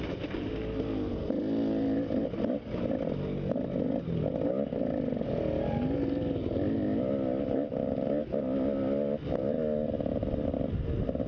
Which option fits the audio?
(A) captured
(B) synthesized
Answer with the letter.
A